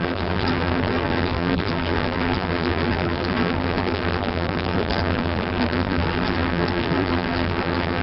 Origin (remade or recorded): remade